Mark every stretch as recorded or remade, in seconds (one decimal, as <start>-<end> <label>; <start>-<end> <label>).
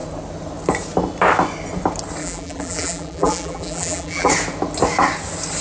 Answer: 0.0-2.2 recorded; 2.2-4.3 remade; 4.3-5.6 recorded